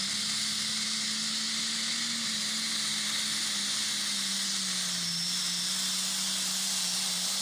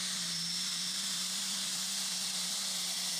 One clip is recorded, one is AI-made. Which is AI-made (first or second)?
second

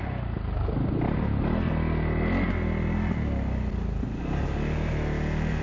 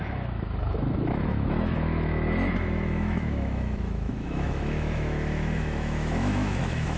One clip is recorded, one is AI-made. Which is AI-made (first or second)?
second